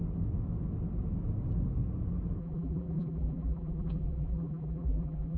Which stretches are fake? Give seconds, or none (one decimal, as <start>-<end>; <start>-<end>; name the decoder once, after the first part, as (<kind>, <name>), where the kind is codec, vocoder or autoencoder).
2.4-5.4 (vocoder, BigVGAN v2)